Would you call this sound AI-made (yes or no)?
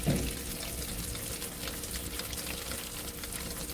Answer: no